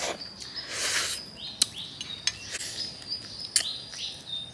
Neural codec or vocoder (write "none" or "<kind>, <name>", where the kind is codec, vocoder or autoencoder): none